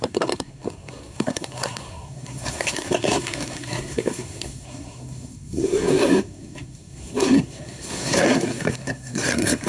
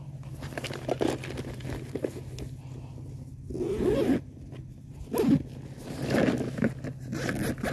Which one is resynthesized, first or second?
first